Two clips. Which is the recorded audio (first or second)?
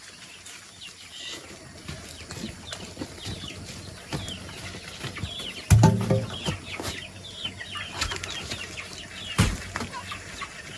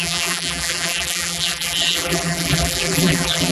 first